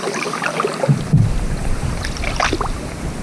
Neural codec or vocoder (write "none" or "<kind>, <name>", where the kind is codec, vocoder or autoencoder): none